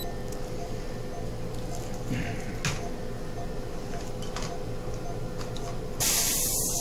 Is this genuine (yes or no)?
yes